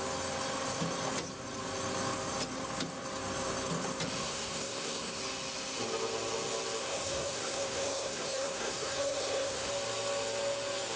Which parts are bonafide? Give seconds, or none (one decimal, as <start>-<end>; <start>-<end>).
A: 0.0-4.2; 5.2-6.8; 9.7-11.0